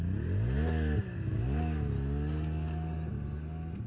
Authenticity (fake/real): real